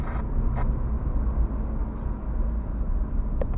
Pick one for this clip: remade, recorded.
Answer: recorded